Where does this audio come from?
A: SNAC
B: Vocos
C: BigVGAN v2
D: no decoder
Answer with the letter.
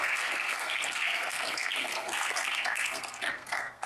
A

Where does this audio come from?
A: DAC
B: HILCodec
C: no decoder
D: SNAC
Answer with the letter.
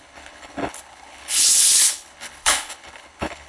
B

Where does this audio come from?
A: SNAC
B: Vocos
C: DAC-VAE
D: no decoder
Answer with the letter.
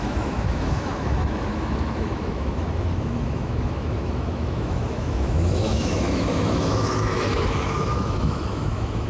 C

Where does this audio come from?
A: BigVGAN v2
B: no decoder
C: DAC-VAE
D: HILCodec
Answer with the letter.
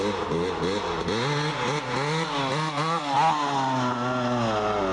B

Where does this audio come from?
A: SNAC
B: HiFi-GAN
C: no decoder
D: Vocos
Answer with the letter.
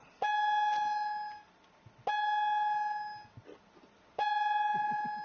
C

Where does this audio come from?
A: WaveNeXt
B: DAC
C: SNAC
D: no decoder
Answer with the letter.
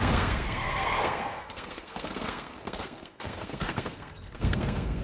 C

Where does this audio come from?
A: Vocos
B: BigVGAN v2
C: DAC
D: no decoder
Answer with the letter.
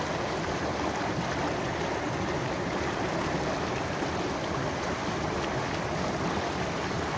D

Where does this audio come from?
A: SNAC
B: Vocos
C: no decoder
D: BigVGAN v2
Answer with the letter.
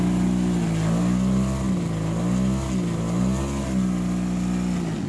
C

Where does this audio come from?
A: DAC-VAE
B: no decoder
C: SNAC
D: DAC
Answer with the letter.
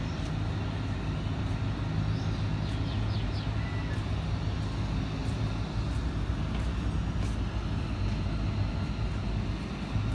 B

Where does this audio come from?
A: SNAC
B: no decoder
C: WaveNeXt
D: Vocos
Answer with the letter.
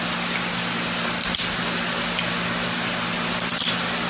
B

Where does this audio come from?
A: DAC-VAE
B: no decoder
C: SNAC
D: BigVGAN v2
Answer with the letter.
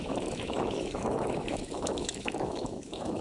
A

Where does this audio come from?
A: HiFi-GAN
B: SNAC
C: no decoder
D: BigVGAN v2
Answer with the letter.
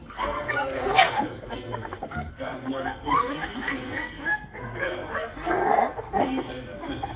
B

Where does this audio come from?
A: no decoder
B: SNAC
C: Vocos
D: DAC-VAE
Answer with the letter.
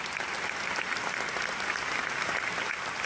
A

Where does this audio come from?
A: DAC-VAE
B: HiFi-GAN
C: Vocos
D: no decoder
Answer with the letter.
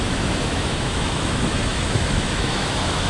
A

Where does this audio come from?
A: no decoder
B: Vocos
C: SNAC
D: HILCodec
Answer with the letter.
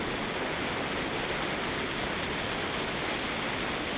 A